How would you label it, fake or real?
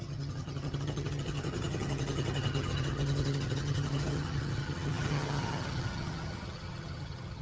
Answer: fake